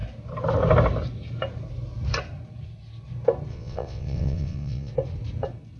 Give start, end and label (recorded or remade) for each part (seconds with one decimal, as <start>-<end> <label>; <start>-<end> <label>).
0.0-3.5 recorded; 3.5-4.9 remade; 4.9-5.8 recorded